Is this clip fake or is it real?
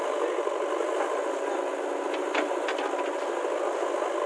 real